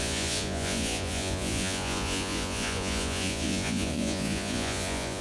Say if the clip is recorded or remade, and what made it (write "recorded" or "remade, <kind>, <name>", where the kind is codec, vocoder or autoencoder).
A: remade, vocoder, Vocos